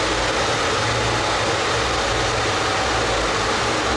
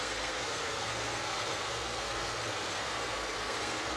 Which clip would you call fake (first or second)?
second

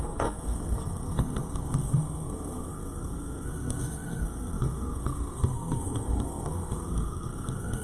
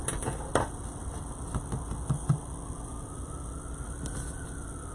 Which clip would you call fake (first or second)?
first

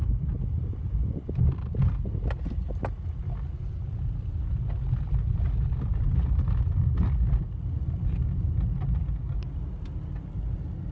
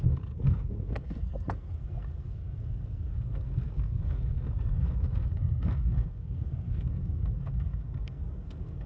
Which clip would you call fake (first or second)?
second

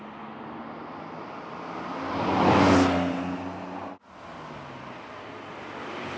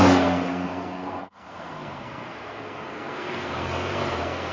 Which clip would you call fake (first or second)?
second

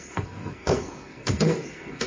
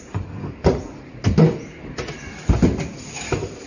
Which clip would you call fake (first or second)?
first